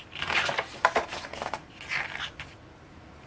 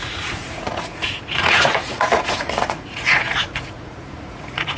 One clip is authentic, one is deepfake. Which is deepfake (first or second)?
second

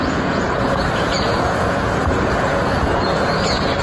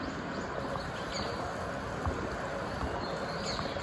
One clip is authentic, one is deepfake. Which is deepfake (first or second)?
first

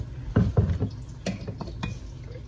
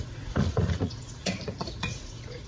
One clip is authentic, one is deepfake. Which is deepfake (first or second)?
second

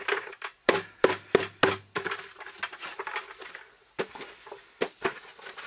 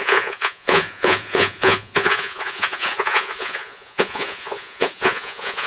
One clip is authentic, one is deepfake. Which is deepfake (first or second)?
second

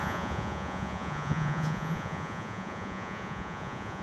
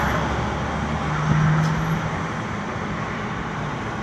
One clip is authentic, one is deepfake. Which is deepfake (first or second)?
first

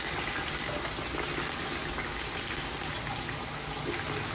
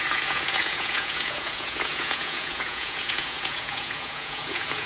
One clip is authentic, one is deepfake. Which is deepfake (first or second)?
second